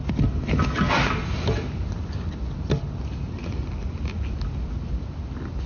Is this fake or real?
real